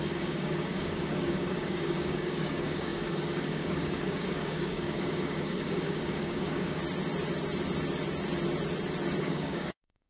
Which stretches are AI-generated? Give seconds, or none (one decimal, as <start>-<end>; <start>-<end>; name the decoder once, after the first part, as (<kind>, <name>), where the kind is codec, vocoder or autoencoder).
0.0-6.8 (codec, DAC); 9.2-10.1